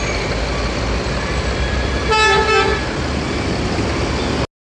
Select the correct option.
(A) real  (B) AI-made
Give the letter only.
A